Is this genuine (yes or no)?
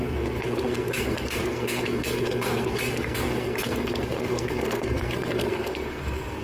no